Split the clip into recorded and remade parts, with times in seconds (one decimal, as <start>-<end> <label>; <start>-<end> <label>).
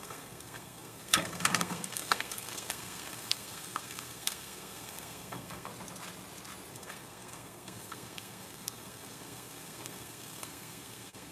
0.0-5.7 remade; 5.7-6.7 recorded; 6.7-11.3 remade